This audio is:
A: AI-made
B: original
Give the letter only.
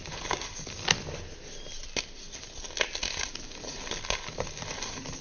B